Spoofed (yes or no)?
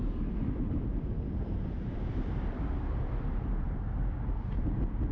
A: no